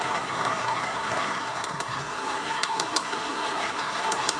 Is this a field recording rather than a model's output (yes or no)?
no